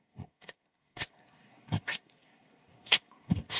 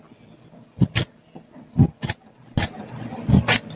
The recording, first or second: second